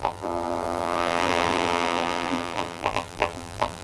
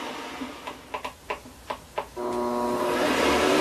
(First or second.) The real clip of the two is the second